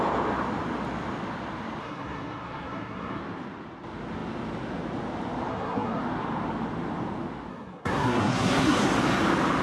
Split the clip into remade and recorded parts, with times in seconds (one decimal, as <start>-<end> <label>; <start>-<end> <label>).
0.0-1.8 recorded; 1.8-3.2 remade; 3.2-5.5 recorded; 5.5-6.0 remade; 6.0-7.5 recorded; 7.5-8.9 remade; 8.9-9.6 recorded